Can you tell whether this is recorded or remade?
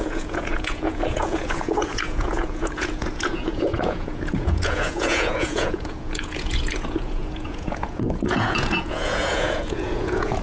remade